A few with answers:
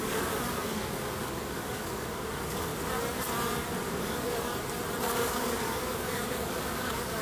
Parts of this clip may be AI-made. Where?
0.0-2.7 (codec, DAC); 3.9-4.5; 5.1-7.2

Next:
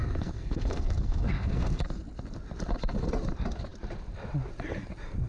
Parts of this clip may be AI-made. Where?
0.0-1.8 (codec, SNAC)